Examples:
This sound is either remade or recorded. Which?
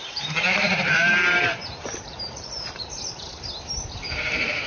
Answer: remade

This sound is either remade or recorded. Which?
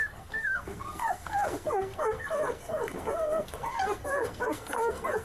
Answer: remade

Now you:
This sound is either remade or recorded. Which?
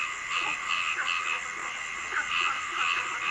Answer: recorded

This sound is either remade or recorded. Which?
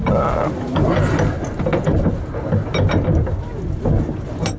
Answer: recorded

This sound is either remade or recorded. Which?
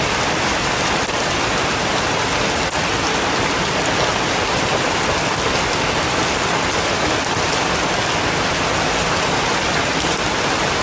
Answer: recorded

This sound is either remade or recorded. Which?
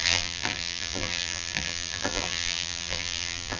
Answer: remade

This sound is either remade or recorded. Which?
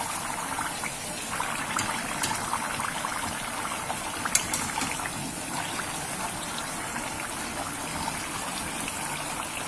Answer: recorded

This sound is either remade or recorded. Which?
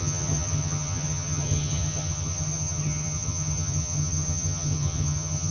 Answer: remade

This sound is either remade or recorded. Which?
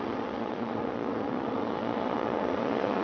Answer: remade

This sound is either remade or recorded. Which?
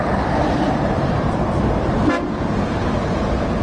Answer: remade